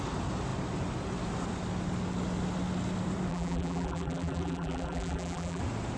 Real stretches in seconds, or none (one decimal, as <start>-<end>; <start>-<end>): 0.0-3.3; 5.6-6.0